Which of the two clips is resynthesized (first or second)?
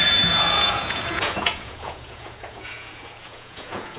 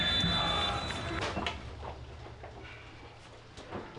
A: first